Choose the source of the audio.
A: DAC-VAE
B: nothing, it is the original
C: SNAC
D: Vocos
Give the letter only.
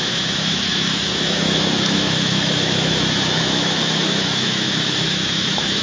A